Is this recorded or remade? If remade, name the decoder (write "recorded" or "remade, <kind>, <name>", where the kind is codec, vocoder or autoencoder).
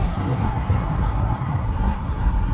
remade, codec, SNAC